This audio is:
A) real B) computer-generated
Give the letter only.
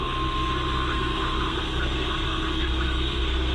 B